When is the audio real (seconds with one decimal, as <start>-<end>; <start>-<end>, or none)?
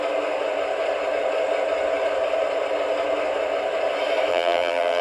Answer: 0.0-4.3